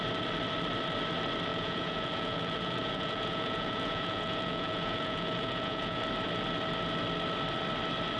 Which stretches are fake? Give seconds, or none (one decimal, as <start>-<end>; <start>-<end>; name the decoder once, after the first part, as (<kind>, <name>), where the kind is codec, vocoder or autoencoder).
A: 1.5-6.0 (vocoder, Vocos)